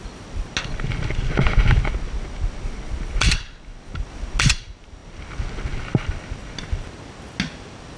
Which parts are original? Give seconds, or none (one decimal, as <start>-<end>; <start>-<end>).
0.0-8.0

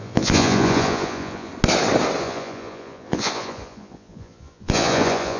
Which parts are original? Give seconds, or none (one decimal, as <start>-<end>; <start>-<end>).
1.5-2.2

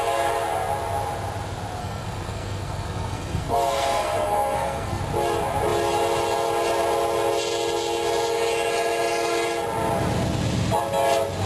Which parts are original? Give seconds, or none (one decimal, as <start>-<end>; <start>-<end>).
0.0-1.8; 5.0-11.5

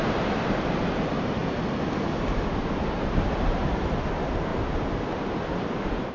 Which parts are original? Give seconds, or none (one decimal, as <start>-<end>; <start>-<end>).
1.4-2.5; 4.5-5.1

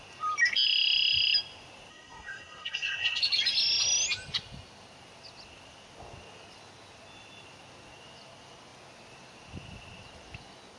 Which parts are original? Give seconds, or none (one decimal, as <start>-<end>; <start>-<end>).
0.0-1.9; 3.2-10.8